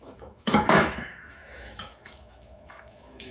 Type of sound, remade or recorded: remade